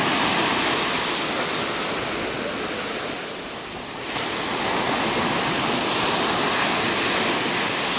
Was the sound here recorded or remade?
recorded